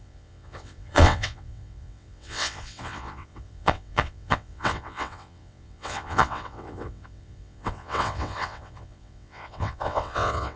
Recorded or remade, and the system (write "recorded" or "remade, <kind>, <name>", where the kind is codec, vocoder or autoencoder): remade, vocoder, WaveNeXt